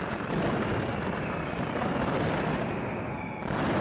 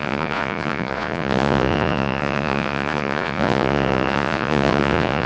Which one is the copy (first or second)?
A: second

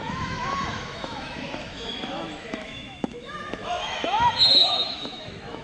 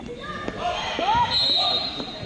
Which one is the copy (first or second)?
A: first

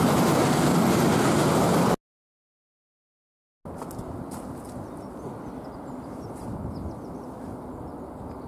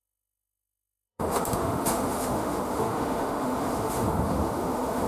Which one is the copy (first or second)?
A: second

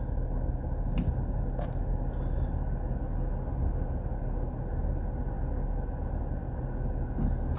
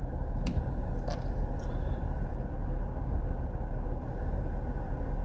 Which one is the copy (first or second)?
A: second